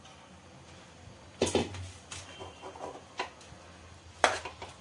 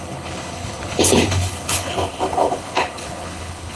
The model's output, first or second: second